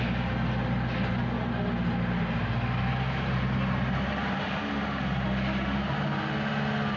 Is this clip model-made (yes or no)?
no